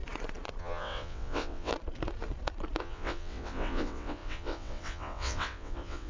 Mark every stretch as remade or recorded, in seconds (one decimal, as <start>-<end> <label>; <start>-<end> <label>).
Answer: 0.0-0.6 recorded; 0.6-1.7 remade; 1.7-2.8 recorded; 2.8-6.1 remade